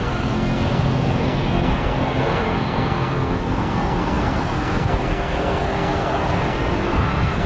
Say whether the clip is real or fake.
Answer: fake